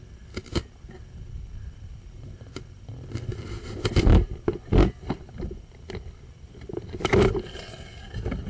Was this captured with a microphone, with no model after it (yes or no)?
yes